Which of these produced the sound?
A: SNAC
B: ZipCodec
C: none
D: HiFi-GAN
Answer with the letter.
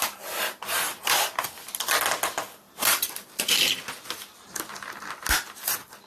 C